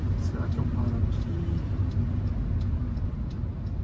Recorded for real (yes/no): yes